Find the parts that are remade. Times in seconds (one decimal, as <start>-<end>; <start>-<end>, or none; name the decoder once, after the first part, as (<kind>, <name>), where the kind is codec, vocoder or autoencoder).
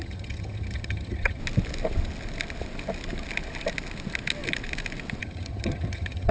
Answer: 0.0-1.4 (vocoder, HiFi-GAN); 5.2-6.3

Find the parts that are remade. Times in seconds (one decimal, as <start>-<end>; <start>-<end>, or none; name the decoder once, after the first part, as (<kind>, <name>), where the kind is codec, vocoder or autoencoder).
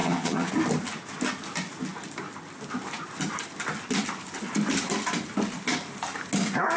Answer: 0.0-0.5 (vocoder, HiFi-GAN)